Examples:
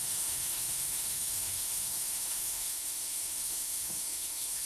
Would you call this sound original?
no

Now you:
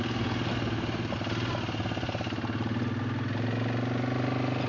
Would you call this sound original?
yes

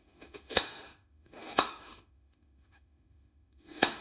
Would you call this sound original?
no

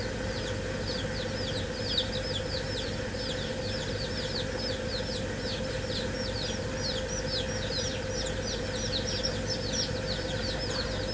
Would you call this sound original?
yes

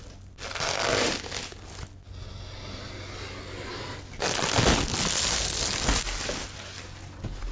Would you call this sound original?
yes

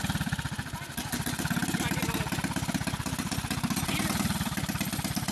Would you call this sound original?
yes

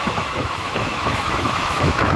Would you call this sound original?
no